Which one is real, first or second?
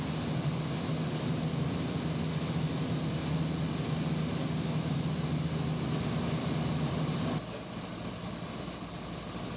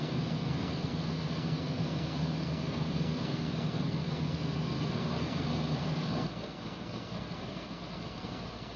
first